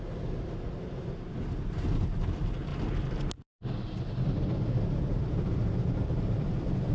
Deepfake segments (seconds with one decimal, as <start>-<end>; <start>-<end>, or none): none